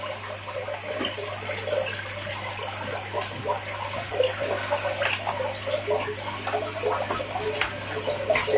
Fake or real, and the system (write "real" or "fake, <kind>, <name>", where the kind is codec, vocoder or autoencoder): real